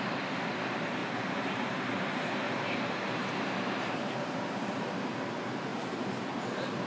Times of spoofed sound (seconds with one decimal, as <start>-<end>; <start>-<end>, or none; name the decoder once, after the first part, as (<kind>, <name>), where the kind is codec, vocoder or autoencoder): 1.0-5.1 (vocoder, BigVGAN v2)